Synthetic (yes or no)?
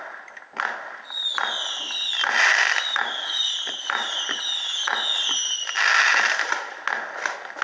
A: no